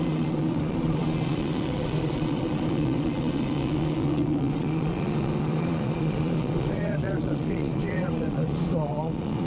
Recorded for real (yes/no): no